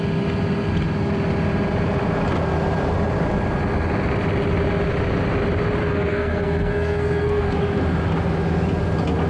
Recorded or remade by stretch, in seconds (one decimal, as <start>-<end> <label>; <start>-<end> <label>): 0.0-5.8 recorded; 5.8-7.6 remade; 7.6-9.3 recorded